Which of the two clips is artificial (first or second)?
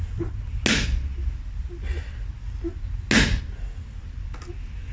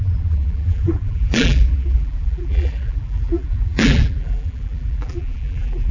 second